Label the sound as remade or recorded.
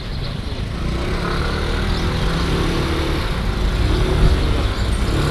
recorded